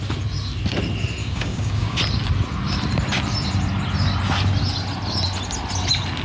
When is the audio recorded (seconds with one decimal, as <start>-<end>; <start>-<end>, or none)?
0.0-1.2; 2.0-6.2